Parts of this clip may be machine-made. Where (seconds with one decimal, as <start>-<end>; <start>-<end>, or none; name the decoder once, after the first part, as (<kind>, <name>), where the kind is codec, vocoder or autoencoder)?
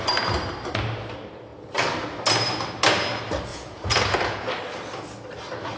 3.5-4.5 (vocoder, Vocos)